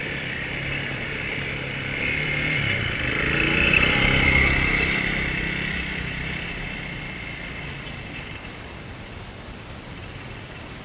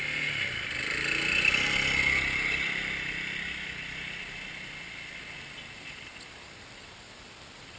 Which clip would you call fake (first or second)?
first